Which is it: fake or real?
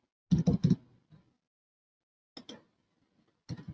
real